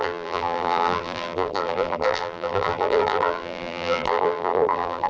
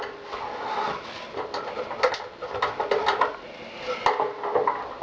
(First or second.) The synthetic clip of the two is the first